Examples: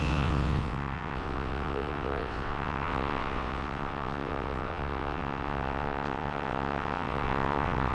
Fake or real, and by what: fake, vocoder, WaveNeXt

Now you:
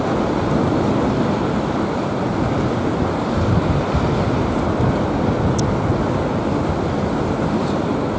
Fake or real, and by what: real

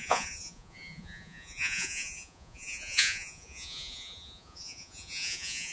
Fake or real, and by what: fake, vocoder, Vocos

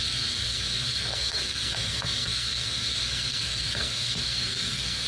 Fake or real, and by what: fake, codec, SNAC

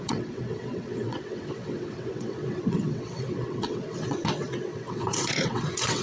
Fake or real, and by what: fake, vocoder, WaveNeXt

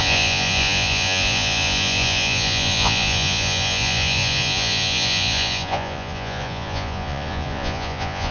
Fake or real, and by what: fake, vocoder, Vocos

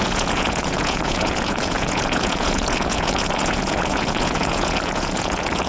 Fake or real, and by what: fake, vocoder, Vocos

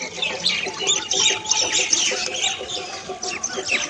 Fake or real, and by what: real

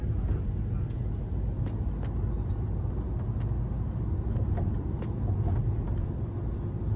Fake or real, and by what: real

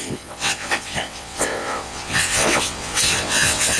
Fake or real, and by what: fake, vocoder, WaveNeXt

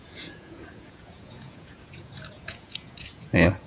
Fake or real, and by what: fake, vocoder, Vocos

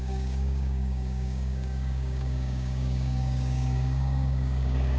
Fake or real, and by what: fake, codec, DAC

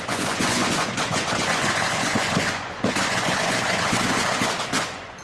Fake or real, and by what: fake, vocoder, Vocos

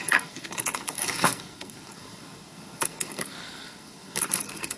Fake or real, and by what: fake, codec, SNAC